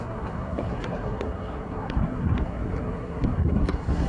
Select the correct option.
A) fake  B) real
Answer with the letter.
A